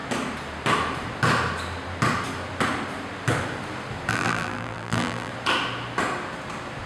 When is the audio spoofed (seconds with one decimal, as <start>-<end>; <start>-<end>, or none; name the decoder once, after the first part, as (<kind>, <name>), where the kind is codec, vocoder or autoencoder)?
4.1-5.3 (vocoder, BigVGAN v2)